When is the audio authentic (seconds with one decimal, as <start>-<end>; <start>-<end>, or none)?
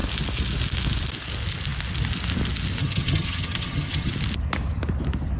0.0-2.8; 4.1-5.4